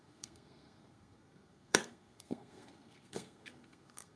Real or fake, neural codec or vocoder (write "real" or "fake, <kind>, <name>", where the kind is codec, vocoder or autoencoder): fake, codec, SNAC